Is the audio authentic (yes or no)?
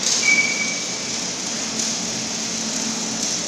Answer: yes